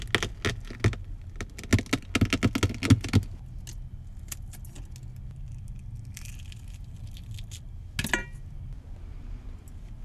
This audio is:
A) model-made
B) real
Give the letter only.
B